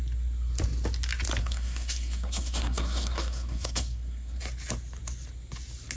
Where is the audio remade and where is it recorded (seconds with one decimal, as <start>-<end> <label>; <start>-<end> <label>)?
0.0-1.4 recorded; 1.4-4.4 remade; 4.4-6.0 recorded